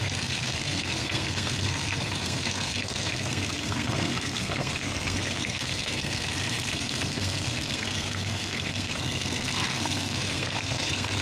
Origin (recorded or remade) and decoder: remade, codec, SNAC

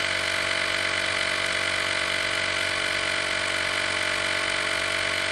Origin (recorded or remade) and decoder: recorded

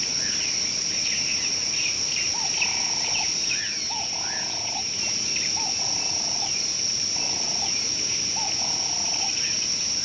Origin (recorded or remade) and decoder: recorded